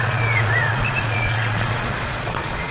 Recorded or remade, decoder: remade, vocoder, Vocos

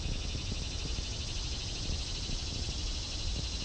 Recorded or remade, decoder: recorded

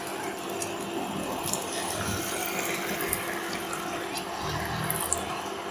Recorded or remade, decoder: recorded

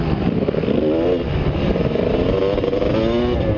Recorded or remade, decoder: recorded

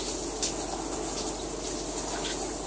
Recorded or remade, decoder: recorded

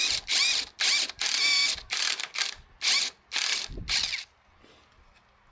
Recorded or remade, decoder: recorded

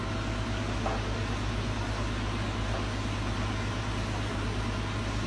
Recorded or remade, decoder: recorded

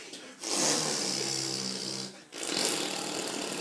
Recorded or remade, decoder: recorded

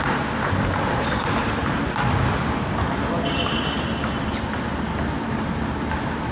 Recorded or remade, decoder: recorded